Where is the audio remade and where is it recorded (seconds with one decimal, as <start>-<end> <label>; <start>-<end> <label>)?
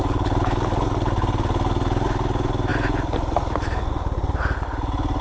0.0-5.2 recorded